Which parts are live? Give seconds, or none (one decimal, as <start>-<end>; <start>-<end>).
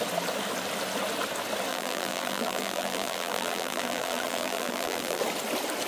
0.0-1.7; 5.2-5.9